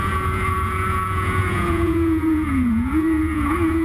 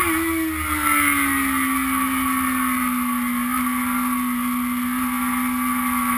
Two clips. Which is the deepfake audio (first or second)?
first